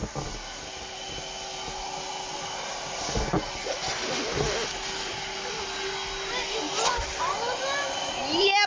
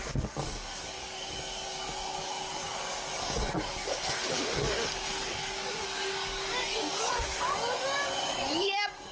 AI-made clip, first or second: second